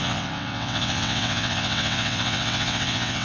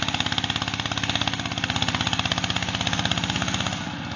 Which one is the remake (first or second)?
first